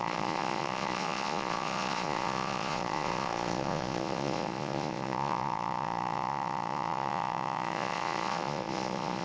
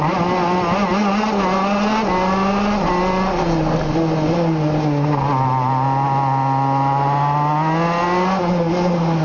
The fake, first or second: first